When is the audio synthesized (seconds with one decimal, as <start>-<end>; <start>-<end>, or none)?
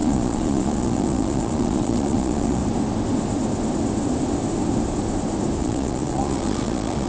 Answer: 0.0-2.6; 5.6-7.1